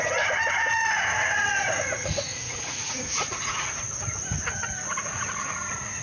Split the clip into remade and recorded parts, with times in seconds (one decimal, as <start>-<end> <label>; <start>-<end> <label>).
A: 0.0-6.0 remade